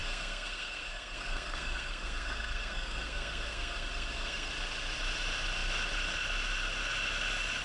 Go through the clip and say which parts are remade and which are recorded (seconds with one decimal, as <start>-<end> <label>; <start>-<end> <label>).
0.0-4.5 remade; 4.5-7.6 recorded